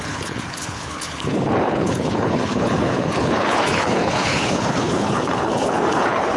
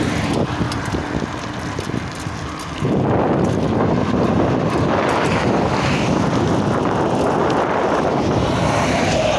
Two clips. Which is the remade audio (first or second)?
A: first